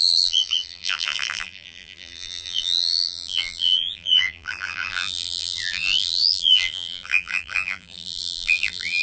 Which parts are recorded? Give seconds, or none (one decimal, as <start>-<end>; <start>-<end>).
none